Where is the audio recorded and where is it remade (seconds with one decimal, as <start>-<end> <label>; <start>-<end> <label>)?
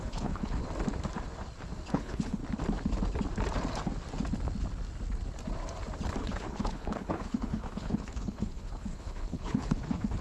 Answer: 0.0-0.6 remade; 0.6-1.9 recorded; 1.9-2.4 remade; 2.4-6.2 recorded; 6.2-10.2 remade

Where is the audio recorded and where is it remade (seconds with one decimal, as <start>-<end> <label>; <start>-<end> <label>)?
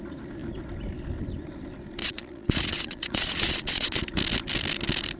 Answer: 0.0-2.0 recorded; 2.0-4.0 remade; 4.0-5.2 recorded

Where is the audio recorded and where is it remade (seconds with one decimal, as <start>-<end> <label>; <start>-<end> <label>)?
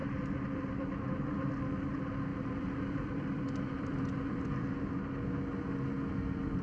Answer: 0.0-0.8 remade; 0.8-2.3 recorded; 2.3-4.9 remade; 4.9-6.6 recorded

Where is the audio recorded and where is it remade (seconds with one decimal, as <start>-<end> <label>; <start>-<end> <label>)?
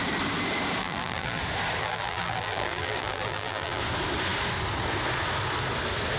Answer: 0.0-0.8 recorded; 0.8-1.4 remade; 1.4-1.8 recorded; 1.8-3.8 remade; 3.8-6.2 recorded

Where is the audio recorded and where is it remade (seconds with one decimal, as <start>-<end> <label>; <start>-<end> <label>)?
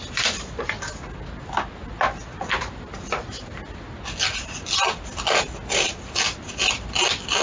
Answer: 0.0-7.4 recorded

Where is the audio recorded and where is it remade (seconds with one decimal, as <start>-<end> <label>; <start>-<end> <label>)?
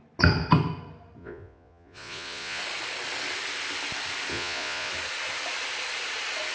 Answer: 0.0-1.2 recorded; 1.2-2.6 remade; 2.6-4.3 recorded; 4.3-4.9 remade; 4.9-6.5 recorded